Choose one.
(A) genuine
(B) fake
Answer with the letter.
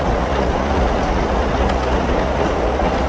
B